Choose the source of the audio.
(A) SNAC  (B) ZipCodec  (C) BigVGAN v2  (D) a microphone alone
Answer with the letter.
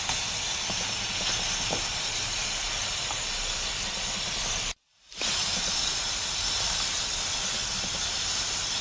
D